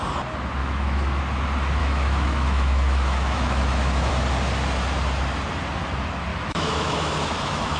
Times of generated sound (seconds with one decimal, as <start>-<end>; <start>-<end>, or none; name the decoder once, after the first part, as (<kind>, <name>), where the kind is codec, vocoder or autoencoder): 0.6-1.2 (autoencoder, DAC-VAE); 1.8-4.1; 6.3-7.8